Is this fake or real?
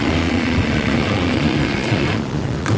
fake